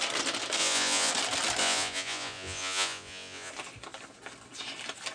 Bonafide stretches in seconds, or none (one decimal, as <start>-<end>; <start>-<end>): 0.0-0.6; 1.1-1.6; 3.5-5.1